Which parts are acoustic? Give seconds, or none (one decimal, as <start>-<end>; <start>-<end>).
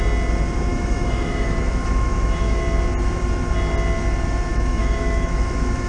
0.0-0.7; 2.6-4.5